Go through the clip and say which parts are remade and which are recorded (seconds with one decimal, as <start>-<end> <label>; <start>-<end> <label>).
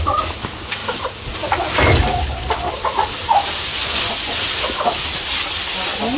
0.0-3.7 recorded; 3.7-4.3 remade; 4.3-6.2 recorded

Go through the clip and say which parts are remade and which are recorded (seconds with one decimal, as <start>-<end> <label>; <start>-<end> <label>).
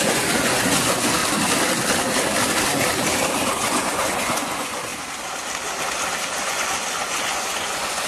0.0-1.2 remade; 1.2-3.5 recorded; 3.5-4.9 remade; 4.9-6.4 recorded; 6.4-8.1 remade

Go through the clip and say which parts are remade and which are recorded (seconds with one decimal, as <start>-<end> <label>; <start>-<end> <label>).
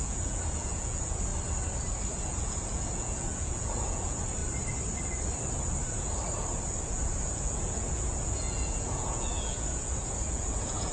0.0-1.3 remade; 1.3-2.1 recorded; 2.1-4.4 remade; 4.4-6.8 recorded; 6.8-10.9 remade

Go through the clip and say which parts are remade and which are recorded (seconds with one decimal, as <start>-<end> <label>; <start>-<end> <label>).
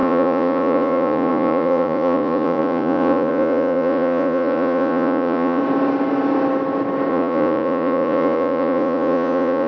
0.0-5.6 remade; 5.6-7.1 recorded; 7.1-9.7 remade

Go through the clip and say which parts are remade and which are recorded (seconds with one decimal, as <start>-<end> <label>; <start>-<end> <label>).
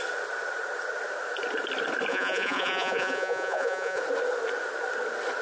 0.0-2.1 recorded; 2.1-4.0 remade; 4.0-5.4 recorded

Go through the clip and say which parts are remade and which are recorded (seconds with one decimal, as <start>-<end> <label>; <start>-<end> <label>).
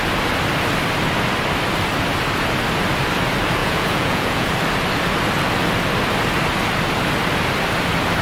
0.0-3.6 recorded; 3.6-4.5 remade; 4.5-8.2 recorded